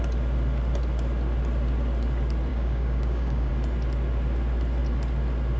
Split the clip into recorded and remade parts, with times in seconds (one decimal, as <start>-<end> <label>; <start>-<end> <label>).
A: 0.0-2.5 recorded; 2.5-3.5 remade; 3.5-5.6 recorded